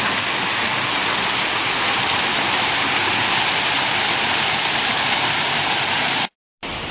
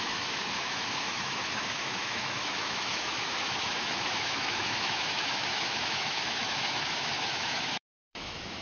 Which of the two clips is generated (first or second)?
second